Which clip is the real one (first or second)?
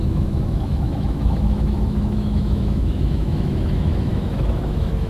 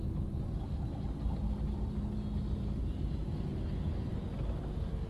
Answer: second